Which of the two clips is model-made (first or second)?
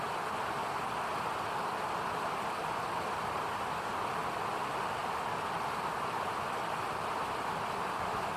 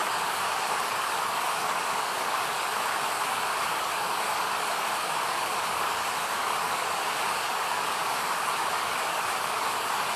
second